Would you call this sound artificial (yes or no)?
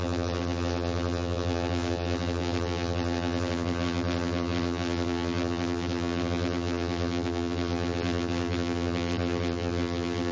yes